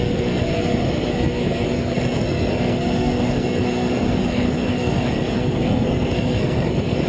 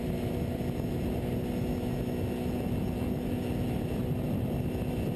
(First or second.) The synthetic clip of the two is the first